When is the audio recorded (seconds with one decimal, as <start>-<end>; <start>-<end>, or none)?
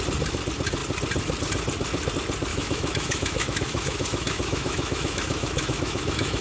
0.0-2.5